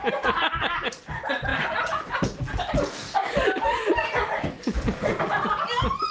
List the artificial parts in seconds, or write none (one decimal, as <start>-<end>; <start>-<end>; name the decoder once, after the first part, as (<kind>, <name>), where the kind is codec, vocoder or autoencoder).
none